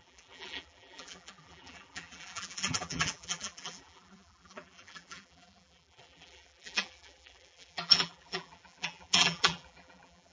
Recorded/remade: remade